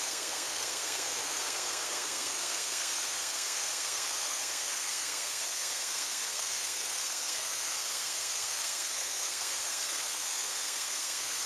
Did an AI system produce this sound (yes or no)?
yes